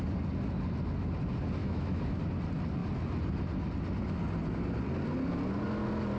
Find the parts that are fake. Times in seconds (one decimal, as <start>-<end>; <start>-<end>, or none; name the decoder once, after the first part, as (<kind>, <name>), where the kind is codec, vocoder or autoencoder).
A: 1.6-2.2 (autoencoder, DAC-VAE)